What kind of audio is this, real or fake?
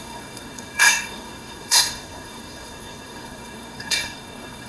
fake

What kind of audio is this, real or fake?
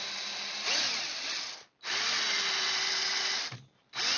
real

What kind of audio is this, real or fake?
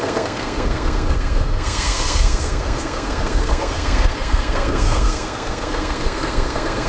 fake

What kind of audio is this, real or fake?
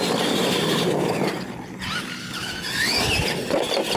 real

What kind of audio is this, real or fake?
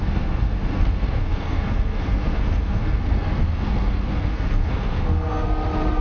fake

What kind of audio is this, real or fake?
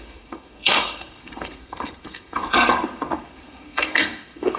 fake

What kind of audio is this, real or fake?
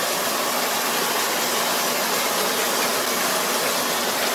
real